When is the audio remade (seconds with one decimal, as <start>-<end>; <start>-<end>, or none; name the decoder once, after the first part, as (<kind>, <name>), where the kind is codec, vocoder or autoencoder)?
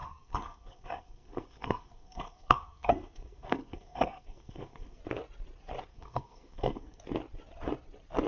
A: 0.0-5.0 (codec, SNAC); 5.9-7.0